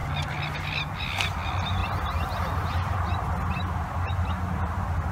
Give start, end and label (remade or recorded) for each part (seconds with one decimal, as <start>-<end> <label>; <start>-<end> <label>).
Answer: 0.0-5.1 recorded